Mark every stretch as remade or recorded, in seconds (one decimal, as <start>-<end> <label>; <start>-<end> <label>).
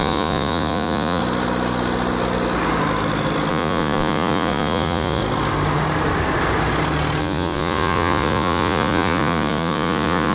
0.0-1.2 remade; 1.2-3.5 recorded; 3.5-5.2 remade; 5.2-7.2 recorded; 7.2-10.3 remade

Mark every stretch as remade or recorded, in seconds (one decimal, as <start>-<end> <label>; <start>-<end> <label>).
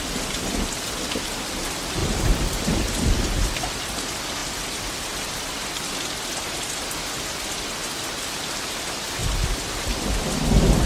0.0-2.0 recorded; 2.0-3.7 remade; 3.7-9.2 recorded; 9.2-10.1 remade; 10.1-10.9 recorded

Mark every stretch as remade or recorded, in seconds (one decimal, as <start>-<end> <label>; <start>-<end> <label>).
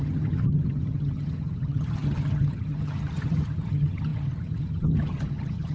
0.0-5.7 remade